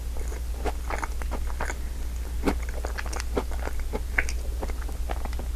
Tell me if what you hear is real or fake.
real